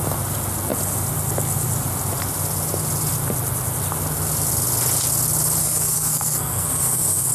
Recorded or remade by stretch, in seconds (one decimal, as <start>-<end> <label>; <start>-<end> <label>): 0.0-5.6 recorded; 5.6-7.3 remade